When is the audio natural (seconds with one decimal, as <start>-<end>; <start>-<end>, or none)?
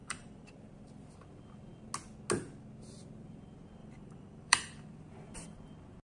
0.5-3.8; 4.9-6.1